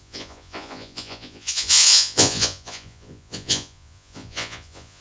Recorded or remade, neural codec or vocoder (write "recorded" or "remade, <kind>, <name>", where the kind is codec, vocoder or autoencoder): remade, vocoder, Vocos